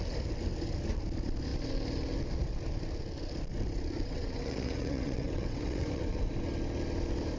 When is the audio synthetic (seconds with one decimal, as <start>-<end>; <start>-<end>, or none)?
4.0-6.2